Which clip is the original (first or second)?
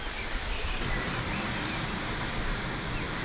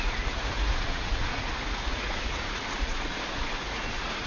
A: first